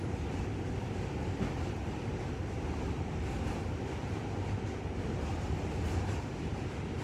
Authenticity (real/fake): real